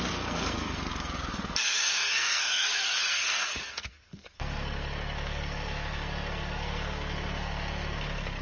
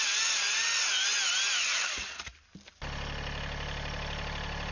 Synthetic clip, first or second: first